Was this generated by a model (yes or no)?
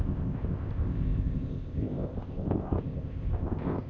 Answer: yes